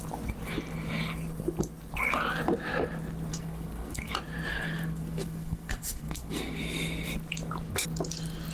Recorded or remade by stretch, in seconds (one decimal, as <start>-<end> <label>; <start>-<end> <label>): 0.0-3.3 recorded; 3.3-4.1 remade; 4.1-4.5 recorded; 4.5-6.6 remade; 6.6-8.5 recorded